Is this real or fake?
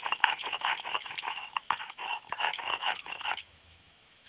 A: fake